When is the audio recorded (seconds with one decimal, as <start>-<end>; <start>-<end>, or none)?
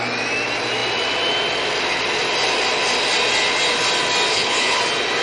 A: 0.0-4.3; 4.8-5.2